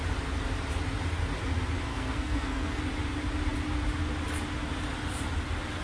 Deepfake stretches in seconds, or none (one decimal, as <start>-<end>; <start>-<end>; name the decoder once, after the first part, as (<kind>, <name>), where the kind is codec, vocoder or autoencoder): 1.9-2.8 (codec, SNAC)